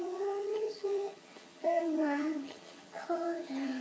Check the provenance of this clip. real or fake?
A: fake